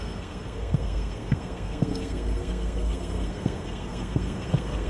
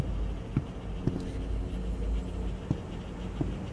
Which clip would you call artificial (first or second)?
first